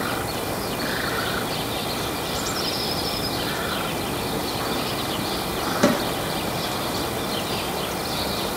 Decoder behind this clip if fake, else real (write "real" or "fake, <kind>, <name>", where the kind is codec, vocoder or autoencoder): fake, vocoder, BigVGAN v2